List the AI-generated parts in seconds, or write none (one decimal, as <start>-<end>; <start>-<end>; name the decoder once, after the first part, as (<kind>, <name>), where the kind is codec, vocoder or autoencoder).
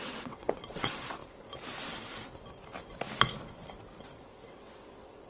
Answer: 0.0-1.2 (vocoder, WaveNeXt); 4.4-5.3